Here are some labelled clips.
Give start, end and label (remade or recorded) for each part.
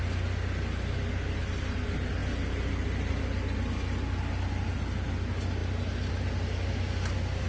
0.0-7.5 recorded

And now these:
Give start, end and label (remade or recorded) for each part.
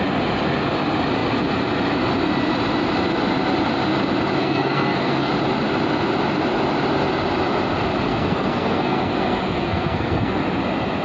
0.0-4.4 recorded; 4.4-5.3 remade; 5.3-8.1 recorded; 8.1-10.4 remade; 10.4-11.0 recorded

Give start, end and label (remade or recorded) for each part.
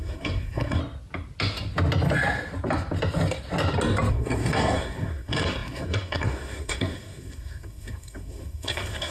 0.0-0.8 remade; 0.8-4.1 recorded; 4.1-9.1 remade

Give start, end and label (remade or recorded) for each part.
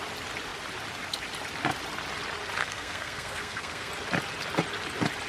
0.0-2.6 recorded; 2.6-3.9 remade; 3.9-5.3 recorded